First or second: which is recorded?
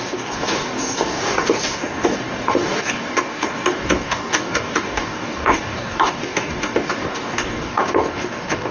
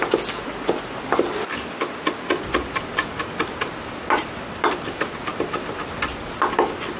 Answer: second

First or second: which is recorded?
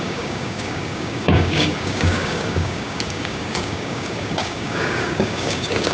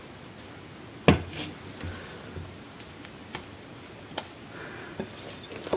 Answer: second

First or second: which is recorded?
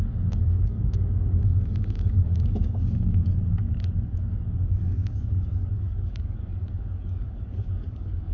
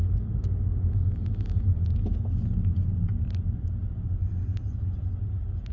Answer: second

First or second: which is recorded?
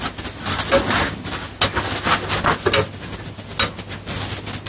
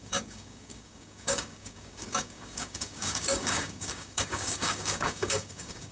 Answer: first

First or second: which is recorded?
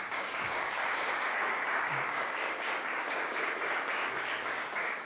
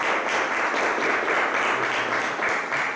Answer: second